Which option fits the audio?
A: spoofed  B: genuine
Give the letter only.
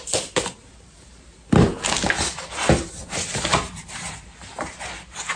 B